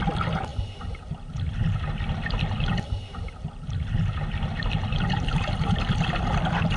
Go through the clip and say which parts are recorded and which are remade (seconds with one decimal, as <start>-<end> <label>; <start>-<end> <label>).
0.0-6.8 recorded